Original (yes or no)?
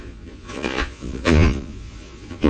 no